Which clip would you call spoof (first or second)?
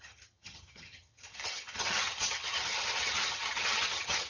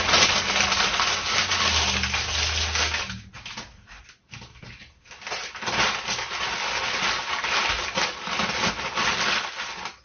first